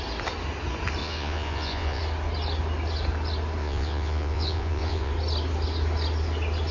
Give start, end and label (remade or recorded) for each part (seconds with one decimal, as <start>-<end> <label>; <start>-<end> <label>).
0.0-1.0 recorded; 1.0-2.0 remade; 2.0-3.6 recorded; 3.6-5.1 remade; 5.1-6.7 recorded